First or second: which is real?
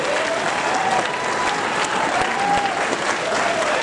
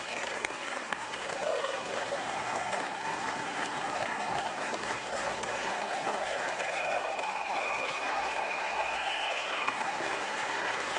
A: first